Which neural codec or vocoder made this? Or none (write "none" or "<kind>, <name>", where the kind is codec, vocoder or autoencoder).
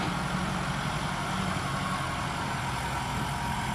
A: none